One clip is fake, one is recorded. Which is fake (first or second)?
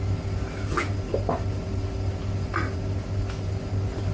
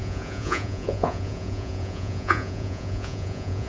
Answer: second